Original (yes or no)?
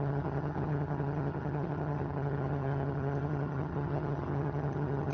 no